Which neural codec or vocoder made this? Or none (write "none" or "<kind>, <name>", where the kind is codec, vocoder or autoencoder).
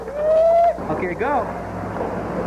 none